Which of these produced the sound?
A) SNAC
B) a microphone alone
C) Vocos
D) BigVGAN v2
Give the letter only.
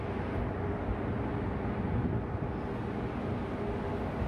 B